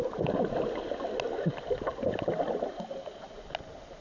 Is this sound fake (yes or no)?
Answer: no